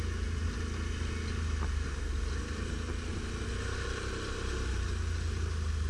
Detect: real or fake real